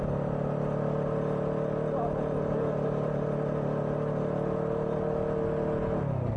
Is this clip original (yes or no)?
yes